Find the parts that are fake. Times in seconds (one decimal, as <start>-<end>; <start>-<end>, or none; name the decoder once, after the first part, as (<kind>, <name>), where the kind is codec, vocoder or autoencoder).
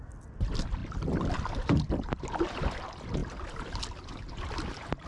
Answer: none